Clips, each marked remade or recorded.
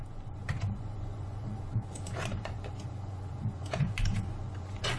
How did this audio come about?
remade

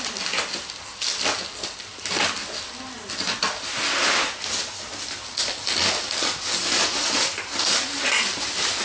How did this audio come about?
recorded